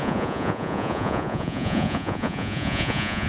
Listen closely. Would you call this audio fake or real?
fake